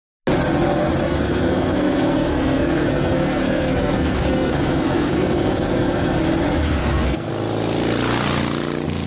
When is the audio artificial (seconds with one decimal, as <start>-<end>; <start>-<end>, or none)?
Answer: 1.0-6.2; 6.8-7.3